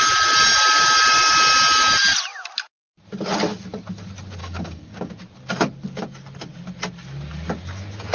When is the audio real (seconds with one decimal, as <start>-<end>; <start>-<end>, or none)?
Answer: 0.0-4.4; 5.1-8.1